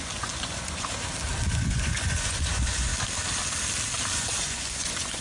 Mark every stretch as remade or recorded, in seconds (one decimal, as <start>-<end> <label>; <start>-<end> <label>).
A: 0.0-0.9 remade; 0.9-1.5 recorded; 1.5-2.9 remade; 2.9-4.1 recorded; 4.1-5.2 remade